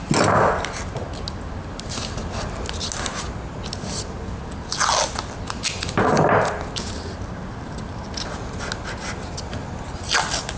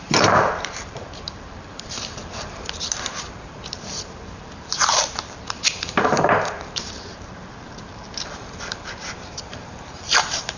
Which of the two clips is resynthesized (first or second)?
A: second